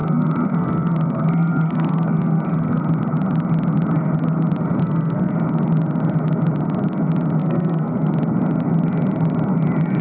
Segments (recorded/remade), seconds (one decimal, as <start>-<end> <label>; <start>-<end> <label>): 0.0-2.8 remade; 2.8-4.8 recorded; 4.8-5.3 remade; 5.3-7.4 recorded; 7.4-8.1 remade; 8.1-10.0 recorded

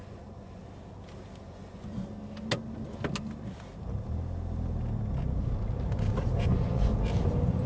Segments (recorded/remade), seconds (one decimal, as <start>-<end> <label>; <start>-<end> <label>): 0.0-0.6 remade; 0.6-1.4 recorded; 1.4-1.9 remade; 1.9-6.4 recorded; 6.4-6.9 remade; 6.9-7.7 recorded

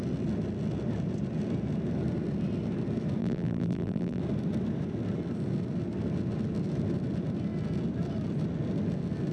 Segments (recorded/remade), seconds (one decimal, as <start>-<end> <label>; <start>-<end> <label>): 0.0-3.2 recorded; 3.2-4.2 remade; 4.2-9.3 recorded

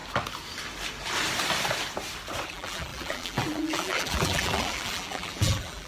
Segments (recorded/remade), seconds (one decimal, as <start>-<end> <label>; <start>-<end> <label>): 0.0-2.5 recorded; 2.5-5.9 remade

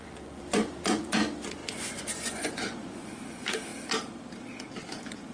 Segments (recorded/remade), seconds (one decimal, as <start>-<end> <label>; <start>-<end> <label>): 0.0-3.7 remade; 3.7-4.8 recorded; 4.8-5.3 remade

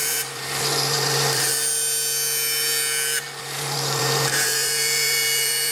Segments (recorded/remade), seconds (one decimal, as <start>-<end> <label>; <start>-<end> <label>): 0.0-1.5 remade; 1.5-3.4 recorded; 3.4-5.7 remade

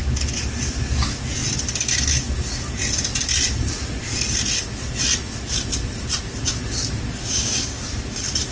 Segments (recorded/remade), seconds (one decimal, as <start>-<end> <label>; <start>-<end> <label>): 0.0-7.2 recorded; 7.2-7.8 remade; 7.8-8.5 recorded

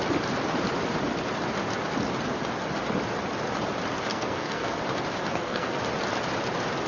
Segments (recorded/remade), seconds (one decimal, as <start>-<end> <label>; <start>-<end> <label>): 0.0-4.1 recorded; 4.1-4.8 remade; 4.8-5.3 recorded; 5.3-5.8 remade; 5.8-6.9 recorded